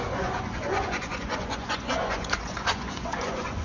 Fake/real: fake